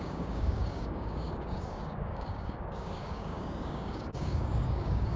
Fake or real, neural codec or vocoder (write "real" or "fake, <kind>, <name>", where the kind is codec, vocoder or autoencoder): fake, codec, DAC